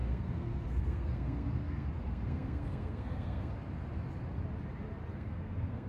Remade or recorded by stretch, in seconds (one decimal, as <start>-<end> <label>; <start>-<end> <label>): 0.0-3.5 remade; 3.5-5.1 recorded; 5.1-5.9 remade